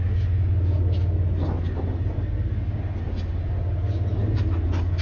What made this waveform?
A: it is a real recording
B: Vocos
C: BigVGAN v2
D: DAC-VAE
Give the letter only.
A